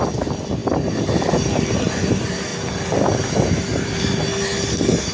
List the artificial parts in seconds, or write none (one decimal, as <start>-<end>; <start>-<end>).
0.6-1.8